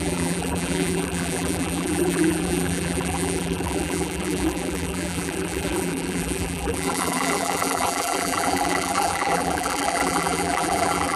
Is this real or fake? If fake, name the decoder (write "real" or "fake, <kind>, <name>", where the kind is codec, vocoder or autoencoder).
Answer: fake, vocoder, BigVGAN v2